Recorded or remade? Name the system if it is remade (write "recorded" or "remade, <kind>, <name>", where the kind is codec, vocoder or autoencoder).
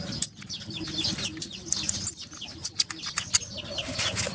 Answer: recorded